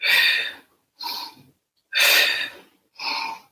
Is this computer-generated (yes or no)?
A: no